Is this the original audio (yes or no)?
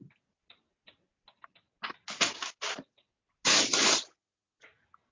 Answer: yes